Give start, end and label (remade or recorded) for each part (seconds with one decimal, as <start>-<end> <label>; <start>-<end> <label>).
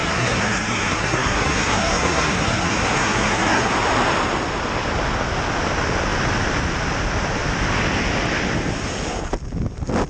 0.0-3.7 remade; 3.7-10.1 recorded